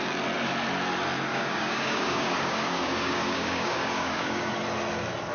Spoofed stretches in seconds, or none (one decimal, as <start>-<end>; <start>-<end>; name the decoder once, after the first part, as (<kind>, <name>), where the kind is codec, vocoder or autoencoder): 1.3-4.5 (codec, DAC)